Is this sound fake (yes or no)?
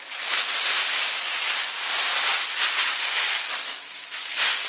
no